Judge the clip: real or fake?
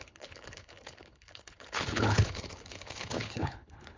fake